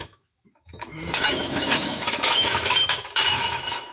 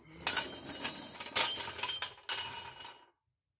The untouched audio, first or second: second